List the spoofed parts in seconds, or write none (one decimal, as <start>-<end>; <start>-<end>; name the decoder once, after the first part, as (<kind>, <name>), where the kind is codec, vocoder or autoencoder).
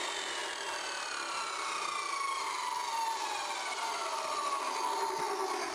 none